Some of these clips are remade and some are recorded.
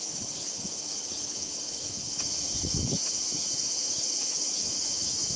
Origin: remade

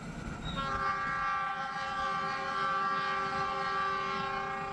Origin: recorded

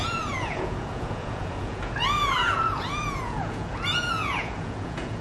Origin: remade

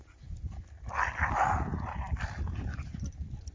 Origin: recorded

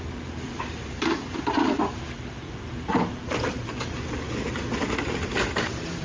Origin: remade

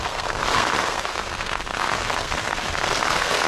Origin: remade